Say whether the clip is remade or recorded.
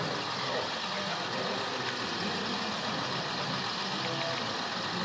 recorded